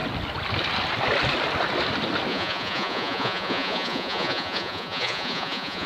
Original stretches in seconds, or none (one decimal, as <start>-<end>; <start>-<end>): 0.0-2.3

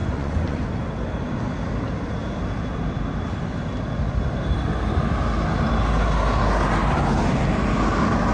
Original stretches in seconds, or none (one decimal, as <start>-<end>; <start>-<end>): 0.7-8.3